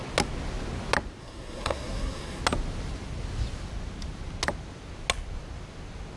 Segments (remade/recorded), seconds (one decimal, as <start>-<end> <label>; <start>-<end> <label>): 0.0-1.2 recorded; 1.2-2.4 remade; 2.4-6.2 recorded